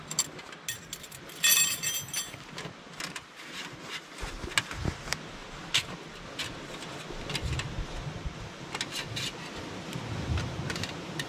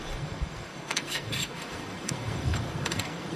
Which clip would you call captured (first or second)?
first